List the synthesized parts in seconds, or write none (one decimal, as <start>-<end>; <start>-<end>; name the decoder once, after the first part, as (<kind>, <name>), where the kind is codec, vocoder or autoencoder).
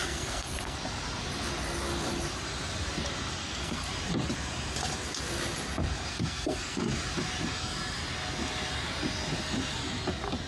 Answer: 0.0-0.8 (codec, SNAC); 3.4-3.9; 6.1-6.8